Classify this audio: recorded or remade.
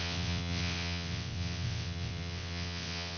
remade